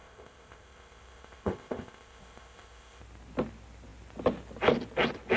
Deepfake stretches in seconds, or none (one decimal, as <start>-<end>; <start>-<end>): 0.0-3.0